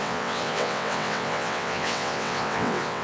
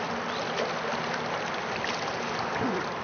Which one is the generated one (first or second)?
first